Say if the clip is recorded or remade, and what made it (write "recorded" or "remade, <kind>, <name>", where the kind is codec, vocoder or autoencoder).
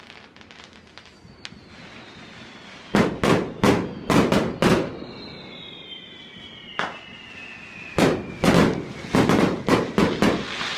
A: recorded